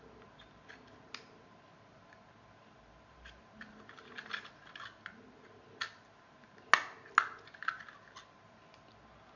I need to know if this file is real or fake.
real